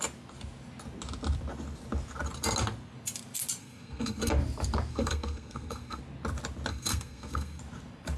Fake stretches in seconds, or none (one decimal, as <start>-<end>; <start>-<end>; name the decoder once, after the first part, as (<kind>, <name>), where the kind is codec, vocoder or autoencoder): 3.6-4.3 (codec, SNAC); 4.9-6.0; 6.7-7.6